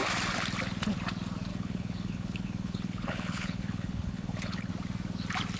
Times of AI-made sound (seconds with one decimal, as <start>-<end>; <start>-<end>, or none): 1.5-4.7